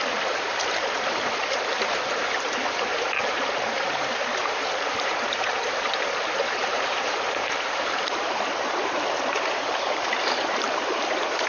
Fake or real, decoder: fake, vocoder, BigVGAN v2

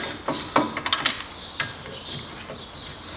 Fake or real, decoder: real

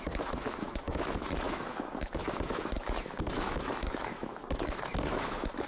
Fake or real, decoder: fake, autoencoder, DAC-VAE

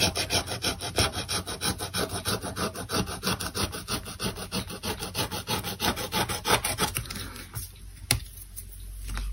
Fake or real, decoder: real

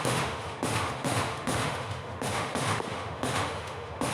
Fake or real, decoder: fake, autoencoder, DAC-VAE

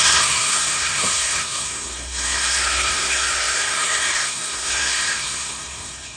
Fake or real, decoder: fake, codec, SNAC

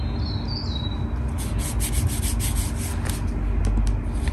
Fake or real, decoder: real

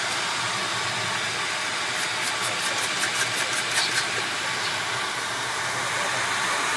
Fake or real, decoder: real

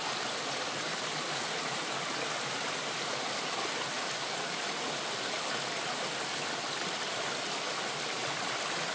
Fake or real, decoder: real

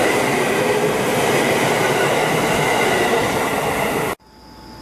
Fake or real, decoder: real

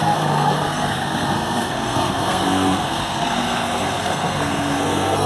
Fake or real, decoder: fake, codec, SNAC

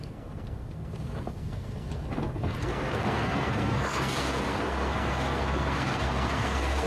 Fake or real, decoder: fake, codec, SNAC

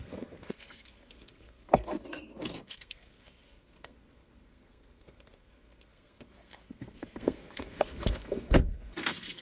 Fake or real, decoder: fake, codec, SNAC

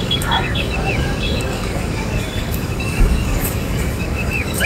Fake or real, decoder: fake, codec, DAC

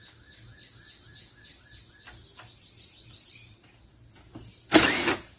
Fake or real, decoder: real